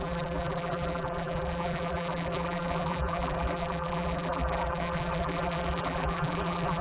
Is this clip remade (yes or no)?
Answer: yes